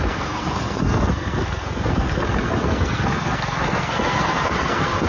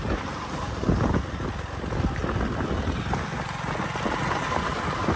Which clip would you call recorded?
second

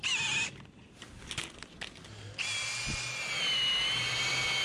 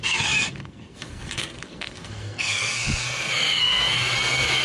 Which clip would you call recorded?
first